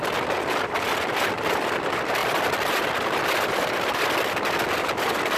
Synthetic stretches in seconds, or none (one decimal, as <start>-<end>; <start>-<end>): none